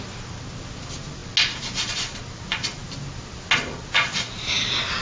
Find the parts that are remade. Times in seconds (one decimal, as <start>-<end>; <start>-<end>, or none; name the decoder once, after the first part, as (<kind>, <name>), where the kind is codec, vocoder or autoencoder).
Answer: none

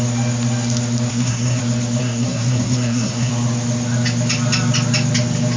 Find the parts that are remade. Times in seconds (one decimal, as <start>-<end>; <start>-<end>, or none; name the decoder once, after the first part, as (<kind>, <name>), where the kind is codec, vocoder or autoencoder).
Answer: 1.1-1.6 (codec, SNAC); 2.0-3.3